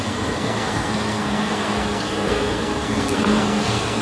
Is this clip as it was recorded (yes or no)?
no